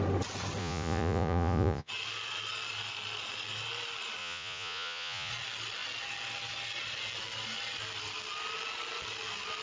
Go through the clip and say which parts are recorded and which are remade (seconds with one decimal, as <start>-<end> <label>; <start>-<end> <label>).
0.0-0.6 recorded; 0.6-1.9 remade; 1.9-4.2 recorded; 4.2-5.3 remade; 5.3-9.6 recorded